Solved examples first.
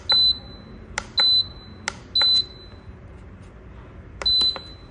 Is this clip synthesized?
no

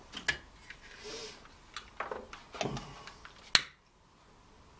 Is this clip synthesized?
no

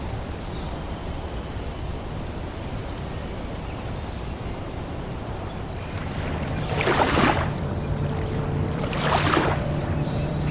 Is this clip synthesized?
yes